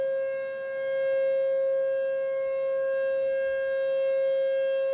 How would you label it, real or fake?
real